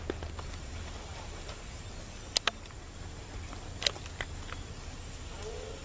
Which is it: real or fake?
real